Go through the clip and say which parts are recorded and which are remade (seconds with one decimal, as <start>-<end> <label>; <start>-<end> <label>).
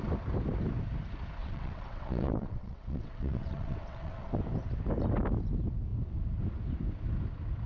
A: 0.0-1.4 recorded; 1.4-4.4 remade; 4.4-7.7 recorded